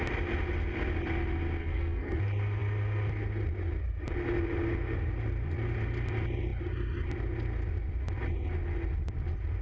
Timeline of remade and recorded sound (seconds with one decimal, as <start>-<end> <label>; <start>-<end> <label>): 0.0-1.6 recorded; 1.6-2.2 remade; 2.2-9.6 recorded